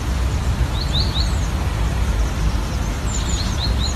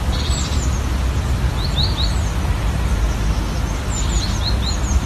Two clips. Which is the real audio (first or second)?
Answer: second